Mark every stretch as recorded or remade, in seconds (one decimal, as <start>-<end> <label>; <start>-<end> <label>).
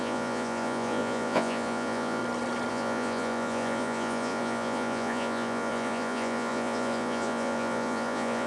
0.0-2.2 remade; 2.2-2.7 recorded; 2.7-8.5 remade